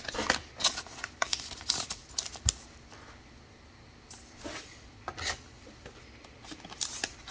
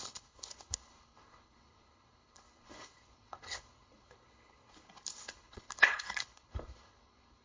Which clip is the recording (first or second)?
first